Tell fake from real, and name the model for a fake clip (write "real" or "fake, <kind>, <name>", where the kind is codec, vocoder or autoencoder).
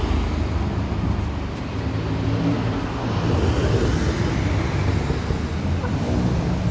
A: real